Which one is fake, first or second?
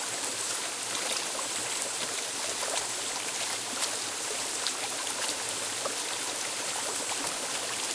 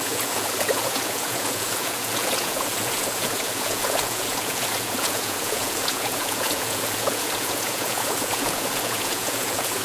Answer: second